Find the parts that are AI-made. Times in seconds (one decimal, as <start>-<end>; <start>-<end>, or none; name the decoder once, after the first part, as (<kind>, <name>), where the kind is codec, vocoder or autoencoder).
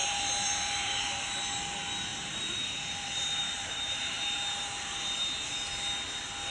0.0-1.3 (vocoder, BigVGAN v2); 2.1-5.5